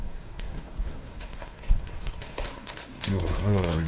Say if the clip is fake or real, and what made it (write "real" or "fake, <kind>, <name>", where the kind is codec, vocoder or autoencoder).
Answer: fake, codec, SNAC